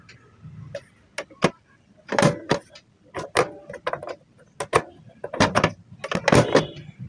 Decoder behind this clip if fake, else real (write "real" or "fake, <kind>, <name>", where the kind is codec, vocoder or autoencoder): real